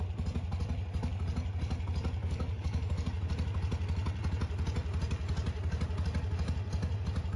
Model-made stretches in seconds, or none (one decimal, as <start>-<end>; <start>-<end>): 2.2-3.1